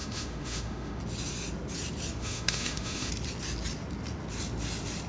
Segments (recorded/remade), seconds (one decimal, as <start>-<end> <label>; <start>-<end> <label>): 0.0-1.0 remade; 1.0-2.2 recorded; 2.2-3.1 remade; 3.1-5.1 recorded